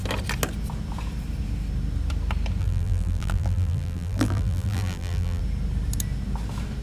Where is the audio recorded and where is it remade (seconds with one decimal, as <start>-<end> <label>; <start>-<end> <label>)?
0.0-2.6 recorded; 2.6-5.4 remade; 5.4-6.8 recorded